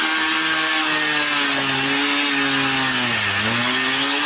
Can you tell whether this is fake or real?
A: real